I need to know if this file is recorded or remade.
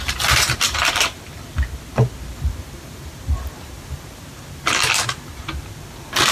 recorded